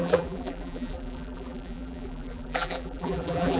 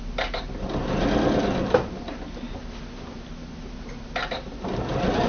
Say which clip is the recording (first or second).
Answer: second